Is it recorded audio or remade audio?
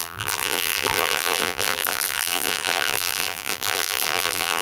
remade